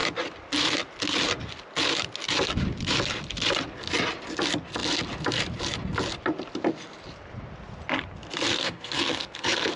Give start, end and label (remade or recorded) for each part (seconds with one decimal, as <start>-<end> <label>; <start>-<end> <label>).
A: 0.0-8.5 recorded; 8.5-9.8 remade